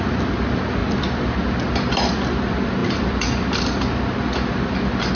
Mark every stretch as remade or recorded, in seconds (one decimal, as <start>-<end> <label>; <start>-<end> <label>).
0.0-5.1 remade